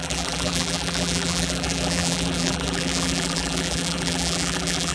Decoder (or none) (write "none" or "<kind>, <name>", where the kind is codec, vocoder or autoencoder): vocoder, BigVGAN v2